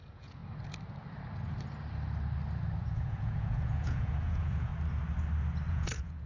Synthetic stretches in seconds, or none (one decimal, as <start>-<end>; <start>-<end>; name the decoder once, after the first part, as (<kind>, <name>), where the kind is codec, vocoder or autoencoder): 0.0-0.4 (vocoder, Vocos); 2.8-4.7; 5.7-6.3